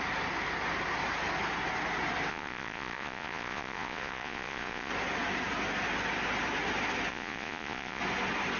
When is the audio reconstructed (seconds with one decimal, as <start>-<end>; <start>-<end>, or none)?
2.3-4.9; 7.1-8.0